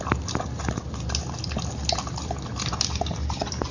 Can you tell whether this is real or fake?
real